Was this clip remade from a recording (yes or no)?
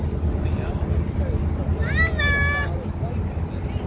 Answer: no